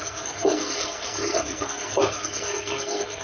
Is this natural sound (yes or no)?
no